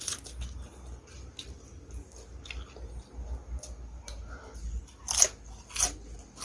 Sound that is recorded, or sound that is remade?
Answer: recorded